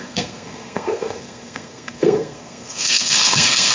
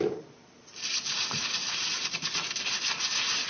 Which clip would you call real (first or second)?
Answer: second